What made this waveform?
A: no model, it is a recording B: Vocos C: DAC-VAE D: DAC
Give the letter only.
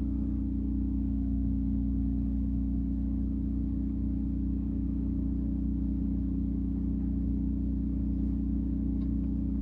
D